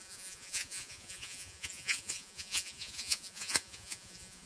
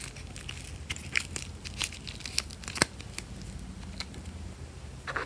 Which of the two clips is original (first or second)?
second